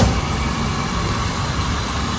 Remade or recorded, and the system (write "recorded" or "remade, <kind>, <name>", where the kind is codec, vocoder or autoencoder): remade, vocoder, BigVGAN v2